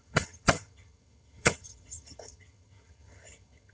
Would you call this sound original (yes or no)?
no